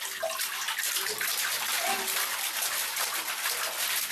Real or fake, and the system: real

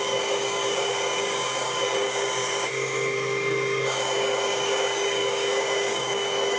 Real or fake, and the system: fake, codec, DAC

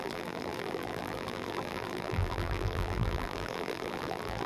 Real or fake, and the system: fake, vocoder, BigVGAN v2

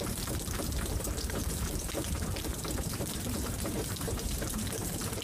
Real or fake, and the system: fake, vocoder, BigVGAN v2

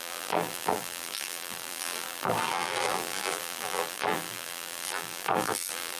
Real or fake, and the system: fake, vocoder, BigVGAN v2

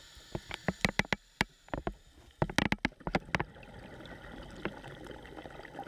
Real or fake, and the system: real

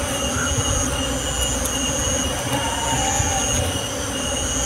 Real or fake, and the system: real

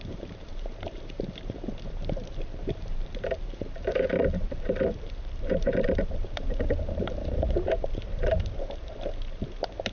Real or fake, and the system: fake, vocoder, BigVGAN v2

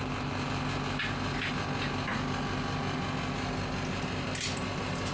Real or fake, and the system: real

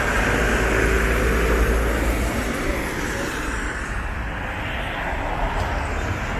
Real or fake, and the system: real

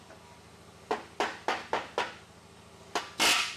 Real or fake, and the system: real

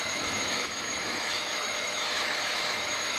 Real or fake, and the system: fake, autoencoder, DAC-VAE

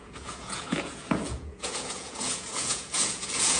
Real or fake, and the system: fake, vocoder, Vocos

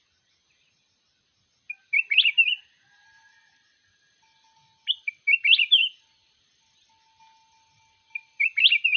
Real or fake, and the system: real